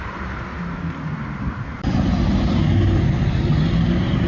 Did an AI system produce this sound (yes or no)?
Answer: no